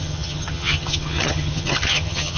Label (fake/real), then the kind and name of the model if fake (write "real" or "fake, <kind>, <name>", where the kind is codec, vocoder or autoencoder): fake, vocoder, HiFi-GAN